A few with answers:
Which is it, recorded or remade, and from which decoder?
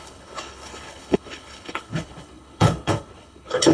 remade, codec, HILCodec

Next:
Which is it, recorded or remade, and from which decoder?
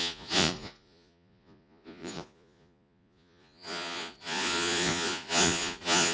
remade, vocoder, Vocos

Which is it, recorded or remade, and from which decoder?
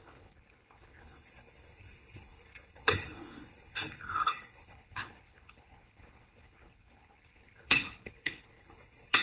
remade, codec, HILCodec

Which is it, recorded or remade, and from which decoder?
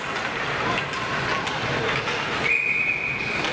recorded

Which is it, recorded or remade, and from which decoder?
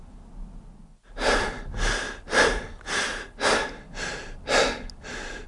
recorded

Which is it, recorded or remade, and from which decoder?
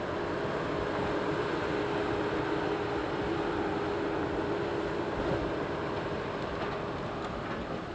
recorded